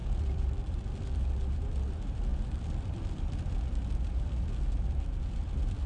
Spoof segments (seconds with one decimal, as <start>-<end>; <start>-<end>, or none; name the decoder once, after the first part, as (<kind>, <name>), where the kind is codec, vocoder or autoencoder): 0.0-5.9 (vocoder, BigVGAN v2)